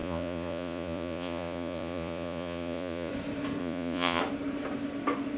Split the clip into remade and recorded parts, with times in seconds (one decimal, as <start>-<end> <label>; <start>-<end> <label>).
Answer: 0.0-3.1 remade; 3.1-3.6 recorded; 3.6-4.2 remade; 4.2-5.4 recorded